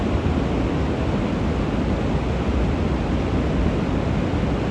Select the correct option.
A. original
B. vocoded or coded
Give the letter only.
A